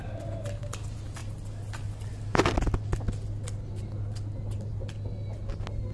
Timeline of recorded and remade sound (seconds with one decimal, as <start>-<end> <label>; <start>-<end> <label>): 0.0-5.9 recorded